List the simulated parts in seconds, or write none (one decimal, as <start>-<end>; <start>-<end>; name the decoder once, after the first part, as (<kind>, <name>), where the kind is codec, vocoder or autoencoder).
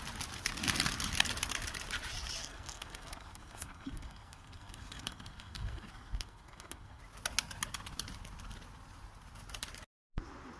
2.4-7.0 (codec, SNAC)